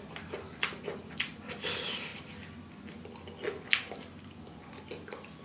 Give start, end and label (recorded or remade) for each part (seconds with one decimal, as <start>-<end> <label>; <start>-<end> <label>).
0.0-5.4 recorded